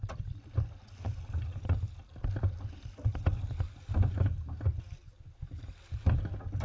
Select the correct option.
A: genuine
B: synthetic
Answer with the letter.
A